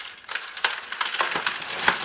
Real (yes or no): yes